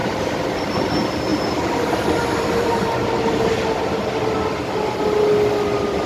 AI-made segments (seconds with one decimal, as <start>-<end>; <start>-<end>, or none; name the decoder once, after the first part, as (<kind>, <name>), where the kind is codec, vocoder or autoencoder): 0.0-0.6 (vocoder, BigVGAN v2); 1.3-3.9